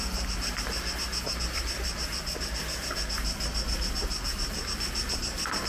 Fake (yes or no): no